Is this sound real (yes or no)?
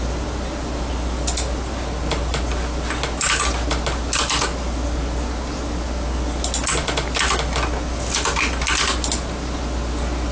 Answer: yes